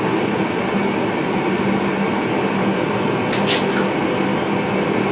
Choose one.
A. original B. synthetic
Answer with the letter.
A